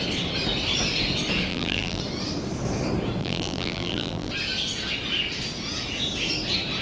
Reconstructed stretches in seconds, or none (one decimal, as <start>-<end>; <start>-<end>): 1.5-2.0; 3.2-4.3

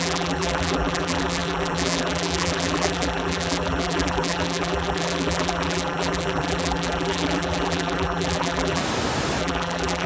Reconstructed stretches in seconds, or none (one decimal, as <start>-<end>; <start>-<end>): 0.0-8.8; 9.4-10.1

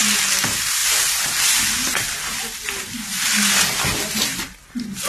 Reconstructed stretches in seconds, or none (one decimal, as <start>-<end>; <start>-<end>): 0.8-1.5

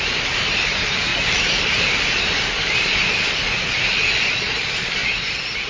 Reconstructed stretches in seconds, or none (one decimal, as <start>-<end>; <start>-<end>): 0.0-1.1; 2.2-3.1; 4.5-5.0

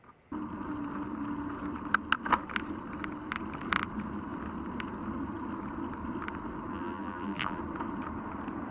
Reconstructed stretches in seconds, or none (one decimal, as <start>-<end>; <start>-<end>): 6.7-7.6

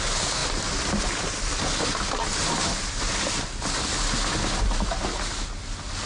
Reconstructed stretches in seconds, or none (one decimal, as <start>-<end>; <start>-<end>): 0.4-1.8